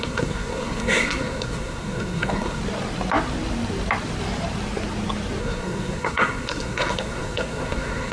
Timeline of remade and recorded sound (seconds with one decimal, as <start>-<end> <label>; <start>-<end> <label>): 0.0-2.6 remade; 2.6-5.4 recorded; 5.4-8.1 remade